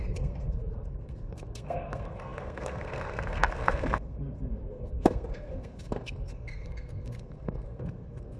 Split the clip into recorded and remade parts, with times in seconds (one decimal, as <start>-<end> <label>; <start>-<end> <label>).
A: 0.0-8.4 remade

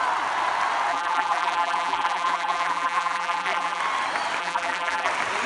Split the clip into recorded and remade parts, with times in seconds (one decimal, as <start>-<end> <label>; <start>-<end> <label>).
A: 0.0-0.9 recorded; 0.9-3.8 remade; 3.8-4.4 recorded; 4.4-5.1 remade; 5.1-5.5 recorded

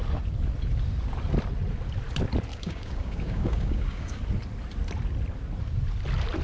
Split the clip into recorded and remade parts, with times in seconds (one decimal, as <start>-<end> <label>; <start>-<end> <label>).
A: 0.0-2.5 recorded; 2.5-4.2 remade; 4.2-6.4 recorded

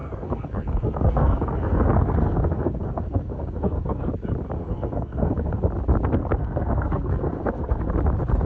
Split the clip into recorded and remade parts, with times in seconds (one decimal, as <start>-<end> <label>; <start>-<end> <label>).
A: 0.0-4.1 remade; 4.1-4.6 recorded; 4.6-5.6 remade; 5.6-6.2 recorded; 6.2-7.9 remade; 7.9-8.5 recorded

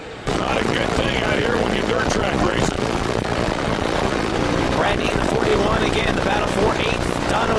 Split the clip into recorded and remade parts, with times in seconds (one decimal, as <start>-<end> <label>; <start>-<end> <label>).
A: 0.0-4.3 remade; 4.3-5.0 recorded; 5.0-5.5 remade; 5.5-7.6 recorded